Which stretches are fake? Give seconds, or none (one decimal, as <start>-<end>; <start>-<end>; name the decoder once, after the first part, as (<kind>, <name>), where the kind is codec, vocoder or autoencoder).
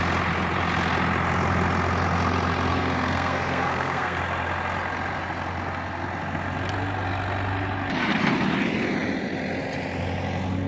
2.7-4.2 (codec, SNAC)